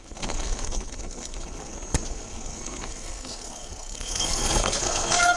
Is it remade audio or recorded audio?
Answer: remade